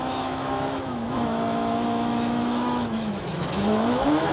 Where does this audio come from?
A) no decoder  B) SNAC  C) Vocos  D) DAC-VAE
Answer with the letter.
D